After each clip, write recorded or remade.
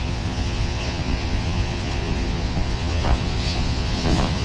remade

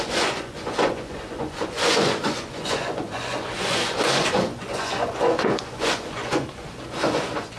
remade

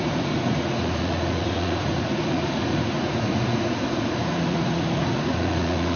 remade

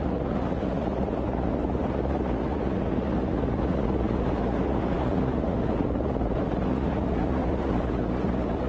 remade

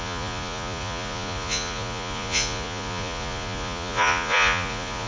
remade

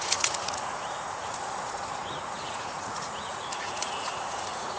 remade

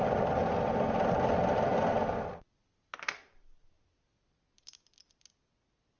recorded